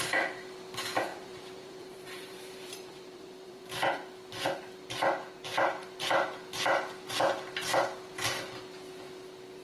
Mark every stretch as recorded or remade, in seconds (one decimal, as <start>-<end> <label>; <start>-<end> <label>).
0.0-1.1 recorded; 1.1-3.6 remade; 3.6-9.6 recorded